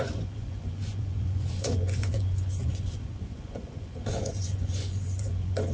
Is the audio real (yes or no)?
no